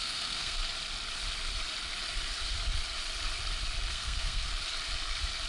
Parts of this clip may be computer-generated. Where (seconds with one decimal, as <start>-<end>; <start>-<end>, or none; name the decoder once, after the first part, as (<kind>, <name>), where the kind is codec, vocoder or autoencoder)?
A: 0.0-0.6 (codec, SNAC); 3.9-4.5